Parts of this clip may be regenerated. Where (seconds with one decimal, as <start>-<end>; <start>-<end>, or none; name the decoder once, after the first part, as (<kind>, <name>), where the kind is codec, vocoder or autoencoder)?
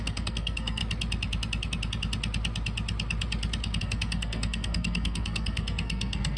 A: 0.0-0.8 (codec, SNAC); 3.8-6.4